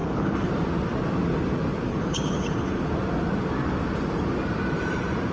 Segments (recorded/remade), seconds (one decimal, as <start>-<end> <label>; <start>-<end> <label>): 0.0-0.5 remade; 0.5-1.9 recorded; 1.9-2.8 remade; 2.8-5.3 recorded